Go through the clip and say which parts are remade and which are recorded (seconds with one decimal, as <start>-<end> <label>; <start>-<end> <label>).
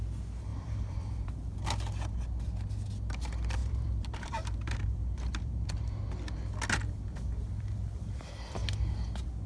0.0-0.5 recorded; 0.5-1.3 remade; 1.3-3.6 recorded; 3.6-6.0 remade; 6.0-9.5 recorded